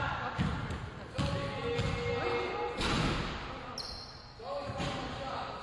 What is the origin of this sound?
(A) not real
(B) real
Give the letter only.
B